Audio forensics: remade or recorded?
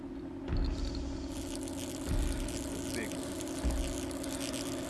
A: recorded